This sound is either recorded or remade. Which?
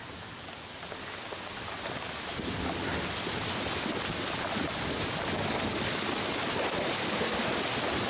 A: recorded